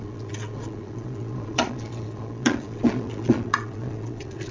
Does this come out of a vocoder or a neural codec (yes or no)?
yes